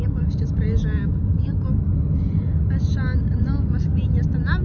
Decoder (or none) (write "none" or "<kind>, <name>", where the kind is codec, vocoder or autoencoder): none